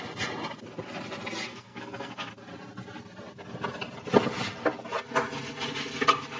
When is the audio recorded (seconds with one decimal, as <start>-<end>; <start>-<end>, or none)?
0.0-1.5; 2.3-6.4